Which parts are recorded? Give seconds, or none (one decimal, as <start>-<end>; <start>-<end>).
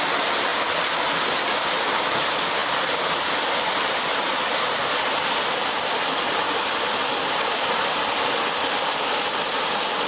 0.0-10.1